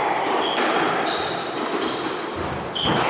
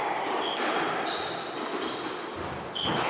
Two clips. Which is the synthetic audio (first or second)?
first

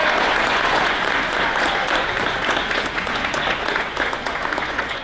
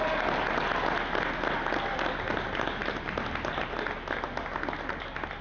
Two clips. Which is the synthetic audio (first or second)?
first